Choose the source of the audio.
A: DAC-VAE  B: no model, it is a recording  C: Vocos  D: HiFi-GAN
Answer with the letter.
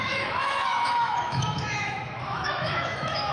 A